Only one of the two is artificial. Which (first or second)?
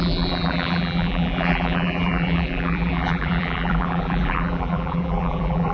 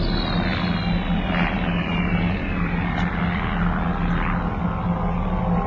first